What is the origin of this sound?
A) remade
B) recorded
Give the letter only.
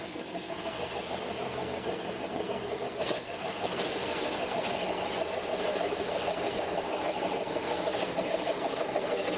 A